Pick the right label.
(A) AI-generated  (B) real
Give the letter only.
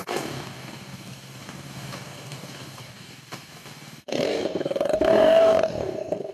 A